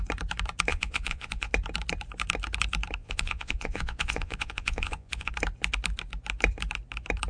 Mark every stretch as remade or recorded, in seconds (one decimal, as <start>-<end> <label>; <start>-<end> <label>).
0.0-0.7 recorded; 0.7-1.5 remade; 1.5-3.0 recorded; 3.0-5.3 remade; 5.3-7.3 recorded